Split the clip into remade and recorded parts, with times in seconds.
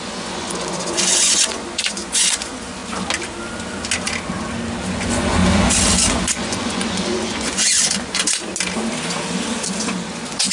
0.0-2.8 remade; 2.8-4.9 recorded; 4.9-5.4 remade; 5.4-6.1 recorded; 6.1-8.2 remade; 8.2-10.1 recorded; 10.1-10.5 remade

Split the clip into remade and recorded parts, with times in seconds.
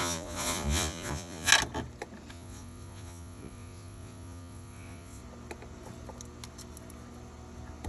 0.0-1.5 remade; 1.5-2.3 recorded; 2.3-5.2 remade; 5.2-7.9 recorded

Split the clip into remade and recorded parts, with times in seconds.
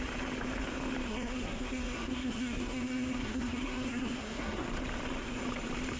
0.0-1.1 recorded; 1.1-4.7 remade; 4.7-6.0 recorded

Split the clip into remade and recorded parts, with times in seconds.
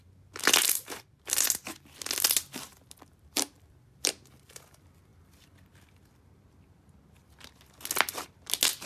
0.0-2.7 recorded; 2.7-4.0 remade; 4.0-8.9 recorded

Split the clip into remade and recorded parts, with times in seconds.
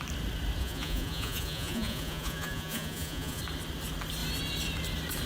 0.0-0.6 recorded; 0.6-3.4 remade; 3.4-5.3 recorded